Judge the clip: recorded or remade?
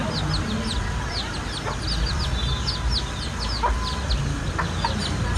recorded